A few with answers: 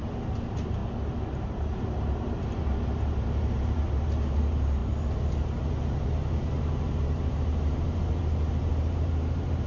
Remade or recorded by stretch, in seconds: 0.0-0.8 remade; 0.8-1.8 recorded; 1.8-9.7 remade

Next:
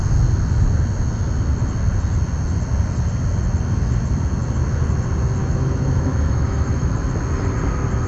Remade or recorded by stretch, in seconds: 0.0-5.4 recorded; 5.4-6.9 remade; 6.9-8.1 recorded

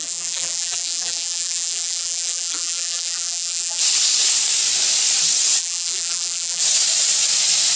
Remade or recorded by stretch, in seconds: 0.0-3.8 remade; 3.8-5.6 recorded; 5.6-6.6 remade; 6.6-7.8 recorded